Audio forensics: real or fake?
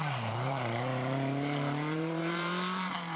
fake